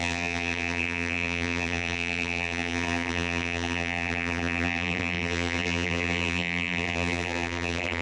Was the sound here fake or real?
fake